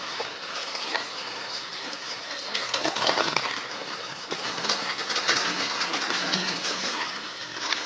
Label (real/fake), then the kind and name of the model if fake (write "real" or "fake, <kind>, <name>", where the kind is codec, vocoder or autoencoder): fake, codec, SNAC